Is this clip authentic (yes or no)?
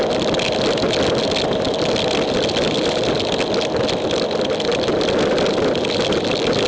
yes